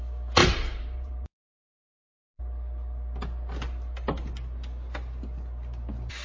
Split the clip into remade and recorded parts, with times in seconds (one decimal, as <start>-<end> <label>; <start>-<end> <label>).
0.0-0.4 recorded; 0.4-1.8 remade; 1.8-6.2 recorded